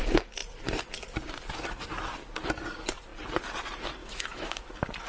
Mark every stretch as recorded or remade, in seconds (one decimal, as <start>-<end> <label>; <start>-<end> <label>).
0.0-4.0 recorded; 4.0-4.6 remade; 4.6-5.1 recorded